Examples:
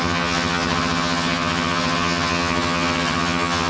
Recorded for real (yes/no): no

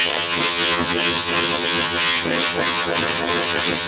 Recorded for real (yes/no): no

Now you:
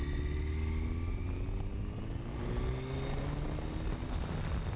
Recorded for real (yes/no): yes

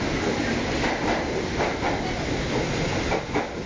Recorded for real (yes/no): yes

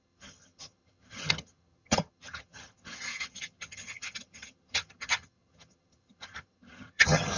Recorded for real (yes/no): no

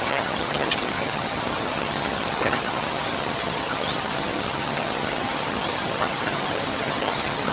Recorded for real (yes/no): no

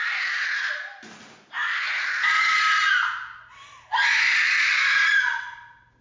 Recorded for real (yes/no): yes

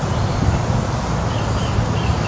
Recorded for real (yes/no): yes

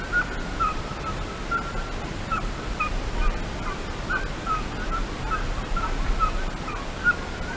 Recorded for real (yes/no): yes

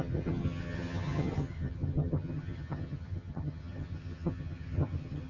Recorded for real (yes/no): no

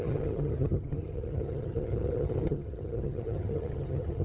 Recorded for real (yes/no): no